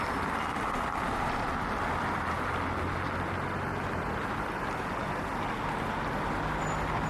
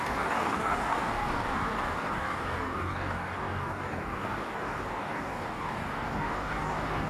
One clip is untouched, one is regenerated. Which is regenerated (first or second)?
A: second